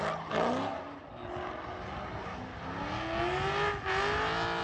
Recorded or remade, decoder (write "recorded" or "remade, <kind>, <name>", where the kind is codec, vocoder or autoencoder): recorded